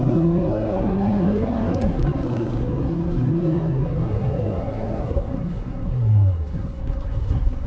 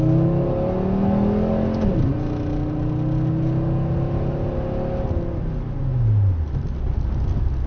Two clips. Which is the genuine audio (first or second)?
second